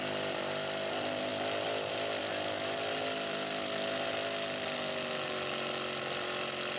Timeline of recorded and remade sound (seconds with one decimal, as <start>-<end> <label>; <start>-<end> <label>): 0.0-6.8 recorded